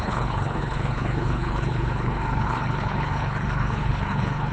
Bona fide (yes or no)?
no